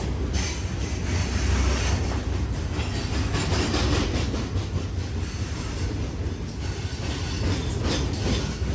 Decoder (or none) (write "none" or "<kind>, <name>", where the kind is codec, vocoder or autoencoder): none